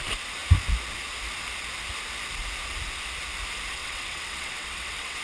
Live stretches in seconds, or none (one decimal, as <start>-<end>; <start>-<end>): 0.0-3.8

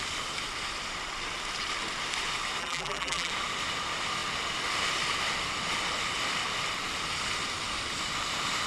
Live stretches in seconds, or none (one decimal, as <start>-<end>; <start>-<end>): 0.0-2.6; 3.3-8.7

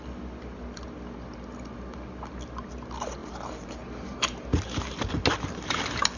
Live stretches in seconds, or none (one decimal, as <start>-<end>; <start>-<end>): 0.0-3.2; 5.1-6.2